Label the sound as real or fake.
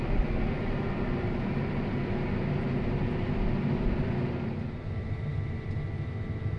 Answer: real